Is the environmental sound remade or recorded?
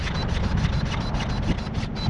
recorded